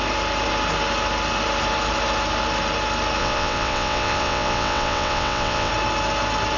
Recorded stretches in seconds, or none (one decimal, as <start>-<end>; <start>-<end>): 0.0-3.2; 5.7-6.6